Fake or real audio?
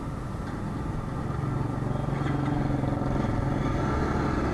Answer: real